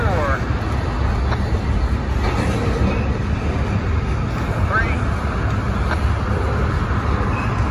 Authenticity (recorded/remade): recorded